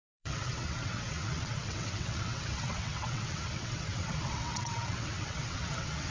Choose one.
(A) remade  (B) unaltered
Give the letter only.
A